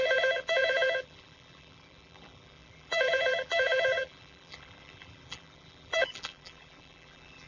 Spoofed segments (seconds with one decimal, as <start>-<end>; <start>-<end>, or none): 0.0-7.5

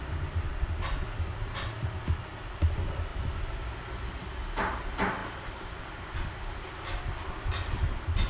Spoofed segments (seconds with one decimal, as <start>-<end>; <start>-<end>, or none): 5.2-5.8

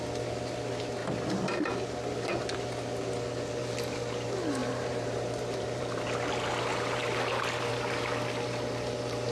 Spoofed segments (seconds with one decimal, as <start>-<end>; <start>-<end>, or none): 4.6-6.1

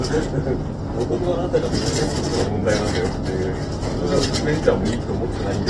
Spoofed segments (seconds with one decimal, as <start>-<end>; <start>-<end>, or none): 1.3-2.2

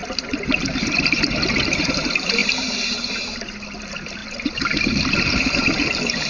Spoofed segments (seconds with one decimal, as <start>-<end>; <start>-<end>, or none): 0.0-2.4; 3.8-6.3